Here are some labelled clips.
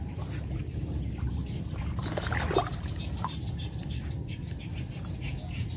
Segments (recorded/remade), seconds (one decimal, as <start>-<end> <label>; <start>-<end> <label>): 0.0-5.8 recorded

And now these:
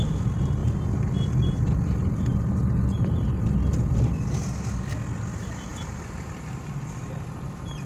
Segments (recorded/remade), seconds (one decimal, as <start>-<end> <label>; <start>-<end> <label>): 0.0-0.6 remade; 0.6-5.3 recorded; 5.3-7.9 remade

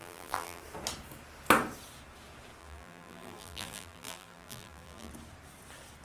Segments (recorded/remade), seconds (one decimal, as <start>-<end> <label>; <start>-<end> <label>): 0.0-0.6 remade; 0.6-2.6 recorded; 2.6-5.1 remade; 5.1-6.0 recorded

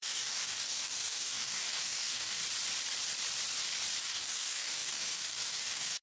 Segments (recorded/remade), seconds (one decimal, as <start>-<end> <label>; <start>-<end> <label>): 0.0-2.4 remade; 2.4-4.0 recorded; 4.0-6.0 remade